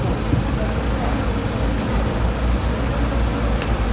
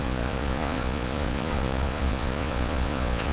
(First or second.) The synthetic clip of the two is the second